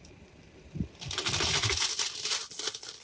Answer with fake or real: real